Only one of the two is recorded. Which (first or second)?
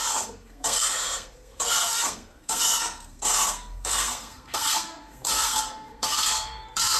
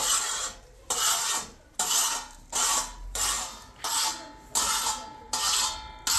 second